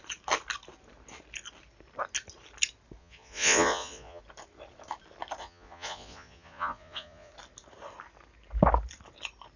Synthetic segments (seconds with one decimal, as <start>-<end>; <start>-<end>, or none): 3.0-4.2; 5.4-7.3